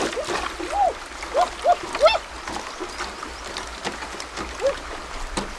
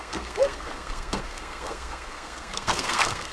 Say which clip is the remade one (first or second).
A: second